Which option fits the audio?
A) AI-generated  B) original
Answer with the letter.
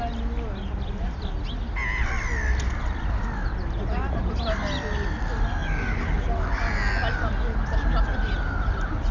B